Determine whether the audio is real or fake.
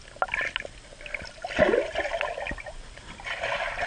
real